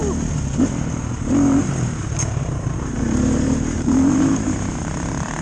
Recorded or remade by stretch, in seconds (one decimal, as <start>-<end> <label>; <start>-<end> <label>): 0.0-1.1 recorded; 1.1-5.4 remade

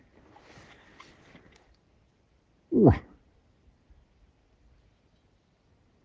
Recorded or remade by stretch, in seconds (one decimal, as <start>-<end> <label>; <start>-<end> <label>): 0.0-6.0 recorded